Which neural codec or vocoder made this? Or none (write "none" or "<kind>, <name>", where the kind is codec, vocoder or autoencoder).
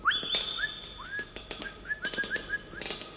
none